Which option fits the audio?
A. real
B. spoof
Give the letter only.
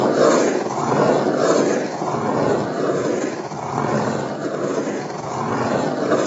A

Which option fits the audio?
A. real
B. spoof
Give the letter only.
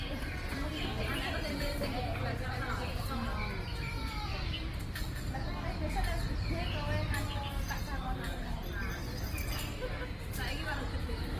A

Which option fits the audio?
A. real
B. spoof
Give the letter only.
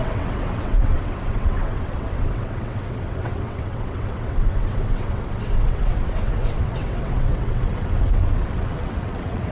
B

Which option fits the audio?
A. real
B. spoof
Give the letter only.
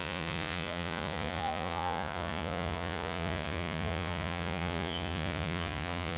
B